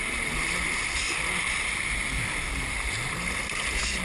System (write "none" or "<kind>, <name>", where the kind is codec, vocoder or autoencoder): none